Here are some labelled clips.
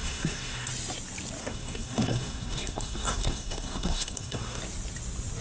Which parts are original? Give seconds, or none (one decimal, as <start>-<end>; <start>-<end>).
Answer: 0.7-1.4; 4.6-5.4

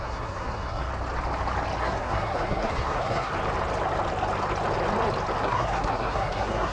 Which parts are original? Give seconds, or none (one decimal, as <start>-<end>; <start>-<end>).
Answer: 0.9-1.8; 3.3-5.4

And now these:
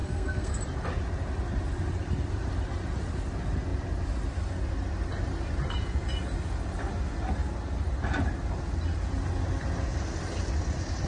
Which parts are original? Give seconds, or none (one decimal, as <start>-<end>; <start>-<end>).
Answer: 0.6-11.1

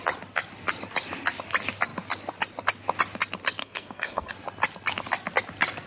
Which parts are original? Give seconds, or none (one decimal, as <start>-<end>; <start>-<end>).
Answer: 0.0-3.6; 4.3-5.9

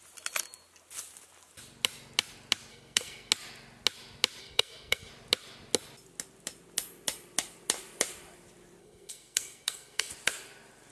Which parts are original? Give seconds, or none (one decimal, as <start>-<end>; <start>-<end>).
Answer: 0.0-2.7; 3.3-4.4; 5.1-8.8; 10.1-10.9

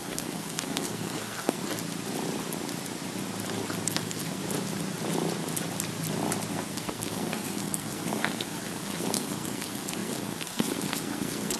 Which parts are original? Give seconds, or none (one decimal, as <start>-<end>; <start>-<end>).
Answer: 1.6-3.9; 4.4-6.5

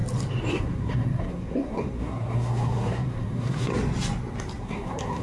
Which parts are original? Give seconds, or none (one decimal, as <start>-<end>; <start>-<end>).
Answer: 0.0-0.5; 3.7-4.6

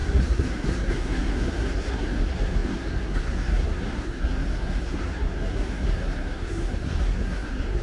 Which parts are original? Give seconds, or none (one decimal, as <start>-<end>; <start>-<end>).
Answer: none